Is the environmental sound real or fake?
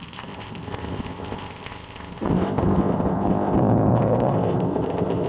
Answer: fake